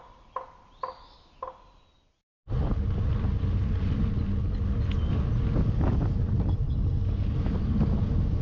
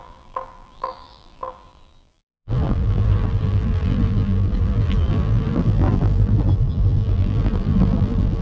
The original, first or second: first